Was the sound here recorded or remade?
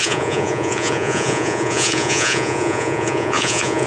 remade